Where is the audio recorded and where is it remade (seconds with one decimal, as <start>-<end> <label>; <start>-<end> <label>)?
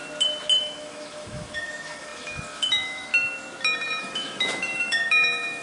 0.0-0.6 recorded; 0.6-3.1 remade; 3.1-4.0 recorded; 4.0-5.6 remade